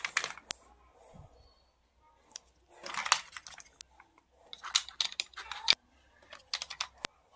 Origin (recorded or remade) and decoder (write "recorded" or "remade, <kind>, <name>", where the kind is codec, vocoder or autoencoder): recorded